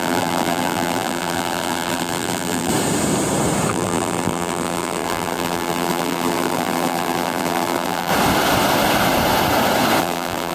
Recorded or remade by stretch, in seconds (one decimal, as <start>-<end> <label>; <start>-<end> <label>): 0.0-2.7 remade; 2.7-3.7 recorded; 3.7-8.1 remade; 8.1-10.0 recorded; 10.0-10.5 remade